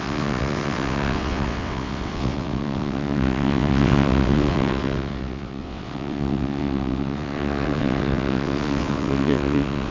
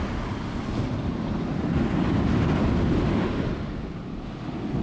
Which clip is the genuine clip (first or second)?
second